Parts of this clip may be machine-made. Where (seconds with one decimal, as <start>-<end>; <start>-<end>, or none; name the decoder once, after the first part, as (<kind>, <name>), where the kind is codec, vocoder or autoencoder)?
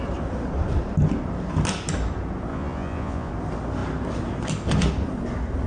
2.5-3.3 (vocoder, Vocos)